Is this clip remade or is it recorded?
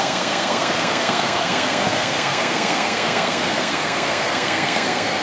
remade